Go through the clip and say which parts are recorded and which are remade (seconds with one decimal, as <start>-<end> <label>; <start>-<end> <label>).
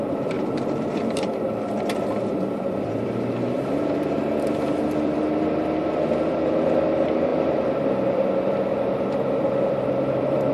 0.0-10.5 remade